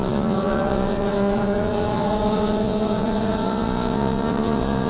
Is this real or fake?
fake